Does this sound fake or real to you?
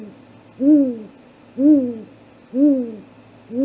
real